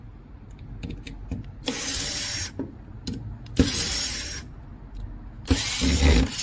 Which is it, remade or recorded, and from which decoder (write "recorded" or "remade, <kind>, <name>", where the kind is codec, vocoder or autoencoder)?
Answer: recorded